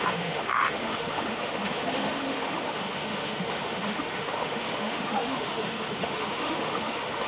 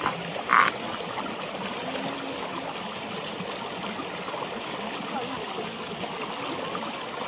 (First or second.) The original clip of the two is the second